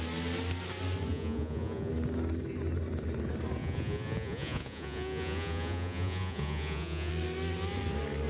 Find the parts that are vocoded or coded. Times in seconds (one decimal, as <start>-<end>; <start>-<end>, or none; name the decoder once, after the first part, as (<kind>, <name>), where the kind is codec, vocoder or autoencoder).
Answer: 1.1-1.9 (vocoder, Vocos); 3.6-7.1